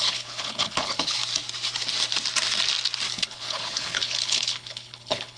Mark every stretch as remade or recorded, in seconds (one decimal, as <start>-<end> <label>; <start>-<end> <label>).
0.0-1.2 remade; 1.2-3.1 recorded; 3.1-5.4 remade